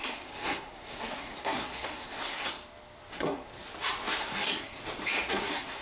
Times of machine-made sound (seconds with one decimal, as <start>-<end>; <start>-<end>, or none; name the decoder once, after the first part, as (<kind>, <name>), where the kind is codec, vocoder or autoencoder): 0.0-2.5 (codec, SNAC); 3.1-3.5; 4.2-4.8; 5.3-5.8